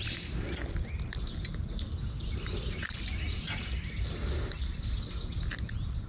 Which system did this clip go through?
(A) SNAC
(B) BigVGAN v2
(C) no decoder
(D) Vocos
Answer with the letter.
C